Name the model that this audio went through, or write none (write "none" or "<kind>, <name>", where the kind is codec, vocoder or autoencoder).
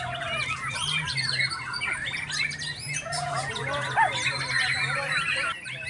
none